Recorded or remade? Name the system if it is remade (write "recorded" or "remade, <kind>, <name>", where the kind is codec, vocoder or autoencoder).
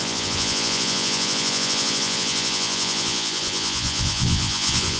remade, vocoder, Vocos